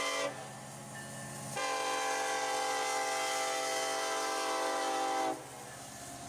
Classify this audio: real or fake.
real